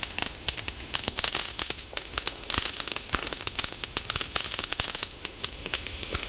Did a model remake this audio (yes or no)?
yes